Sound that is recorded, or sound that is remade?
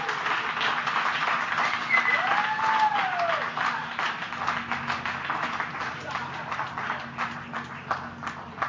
recorded